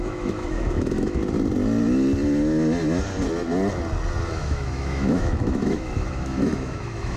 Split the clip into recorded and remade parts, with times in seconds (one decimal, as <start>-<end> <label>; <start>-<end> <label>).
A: 0.0-1.2 remade; 1.2-4.4 recorded; 4.4-7.2 remade